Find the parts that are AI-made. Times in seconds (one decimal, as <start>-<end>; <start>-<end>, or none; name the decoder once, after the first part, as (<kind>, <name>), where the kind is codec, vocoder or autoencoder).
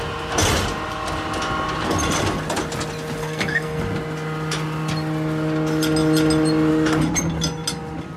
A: 3.2-3.8 (codec, SNAC)